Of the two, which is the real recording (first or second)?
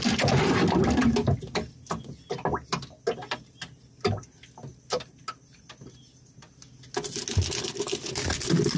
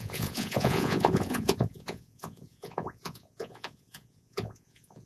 first